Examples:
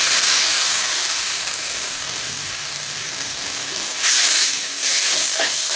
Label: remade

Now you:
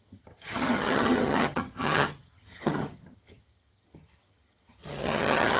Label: remade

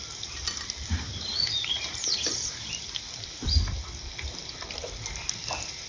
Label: remade